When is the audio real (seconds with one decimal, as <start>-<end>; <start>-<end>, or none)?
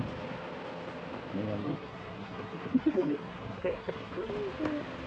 0.0-1.6; 4.3-5.1